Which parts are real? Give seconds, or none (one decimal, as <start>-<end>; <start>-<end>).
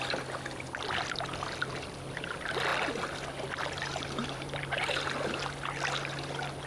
0.0-4.2; 4.8-6.7